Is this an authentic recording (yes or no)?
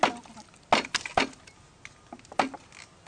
yes